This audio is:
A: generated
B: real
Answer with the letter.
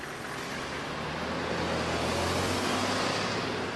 B